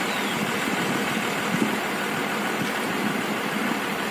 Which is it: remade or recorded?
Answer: recorded